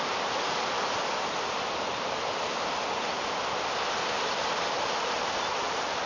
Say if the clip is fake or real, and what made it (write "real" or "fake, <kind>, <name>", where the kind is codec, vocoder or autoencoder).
real